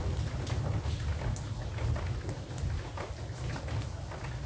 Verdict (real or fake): real